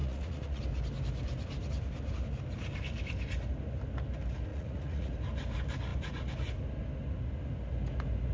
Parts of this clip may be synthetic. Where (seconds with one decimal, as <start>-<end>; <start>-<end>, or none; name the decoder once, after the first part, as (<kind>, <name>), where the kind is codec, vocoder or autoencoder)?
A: 0.0-0.6 (vocoder, Vocos); 4.5-5.1